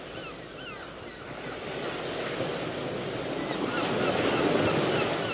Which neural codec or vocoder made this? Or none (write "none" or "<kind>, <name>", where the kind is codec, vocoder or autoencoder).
none